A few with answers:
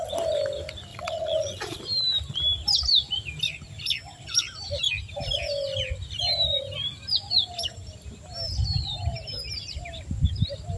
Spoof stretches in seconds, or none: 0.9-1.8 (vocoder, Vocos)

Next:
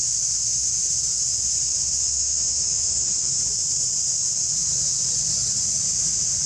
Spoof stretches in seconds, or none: 2.0-3.4 (autoencoder, DAC-VAE)

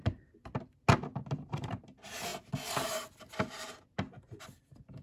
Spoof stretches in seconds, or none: none

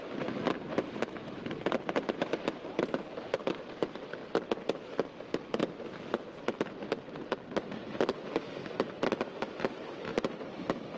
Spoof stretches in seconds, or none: 0.7-1.4 (autoencoder, DAC-VAE)

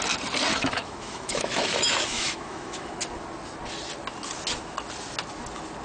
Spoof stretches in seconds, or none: 0.5-2.9 (autoencoder, DAC-VAE)

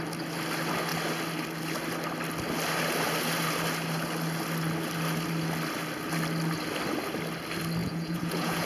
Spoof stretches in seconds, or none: 7.8-8.7 (vocoder, Vocos)

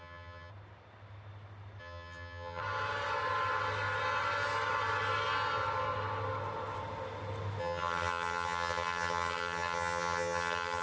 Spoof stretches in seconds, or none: 0.0-0.5 (vocoder, HiFi-GAN); 1.8-2.6; 7.6-10.8

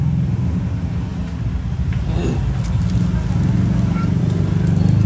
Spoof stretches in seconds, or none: none